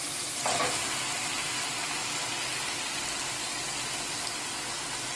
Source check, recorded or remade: recorded